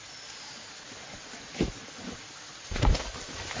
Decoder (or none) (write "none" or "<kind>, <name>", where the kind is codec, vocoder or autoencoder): none